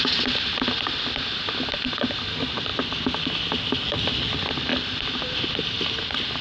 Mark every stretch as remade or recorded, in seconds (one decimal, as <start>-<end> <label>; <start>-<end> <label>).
0.0-6.4 recorded